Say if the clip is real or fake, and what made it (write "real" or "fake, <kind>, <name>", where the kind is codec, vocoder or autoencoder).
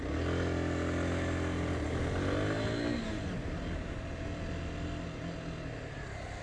real